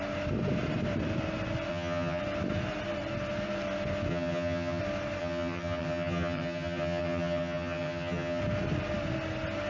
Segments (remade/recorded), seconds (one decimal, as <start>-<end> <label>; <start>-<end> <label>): 0.0-1.7 recorded; 1.7-2.2 remade; 2.2-4.1 recorded; 4.1-4.8 remade; 4.8-5.2 recorded; 5.2-8.4 remade; 8.4-9.7 recorded